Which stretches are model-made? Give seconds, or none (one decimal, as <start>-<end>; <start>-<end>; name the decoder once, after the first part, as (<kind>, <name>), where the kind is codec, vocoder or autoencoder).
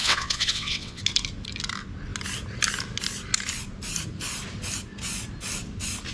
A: 0.0-1.0 (vocoder, WaveNeXt)